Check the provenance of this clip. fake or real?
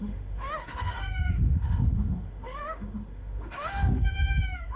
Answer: fake